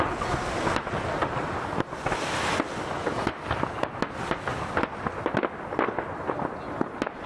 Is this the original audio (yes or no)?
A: yes